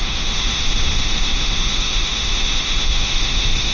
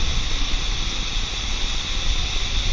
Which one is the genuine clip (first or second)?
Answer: second